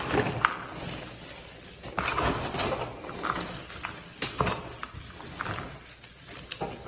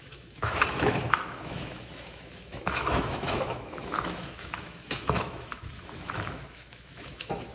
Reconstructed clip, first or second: second